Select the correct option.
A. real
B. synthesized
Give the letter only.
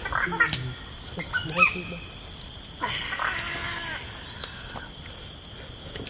A